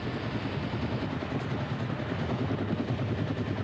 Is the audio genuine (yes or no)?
yes